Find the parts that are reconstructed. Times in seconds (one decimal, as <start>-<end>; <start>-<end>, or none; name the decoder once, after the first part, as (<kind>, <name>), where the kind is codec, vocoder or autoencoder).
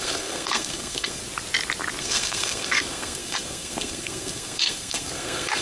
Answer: 0.0-1.2 (codec, SNAC); 2.0-5.6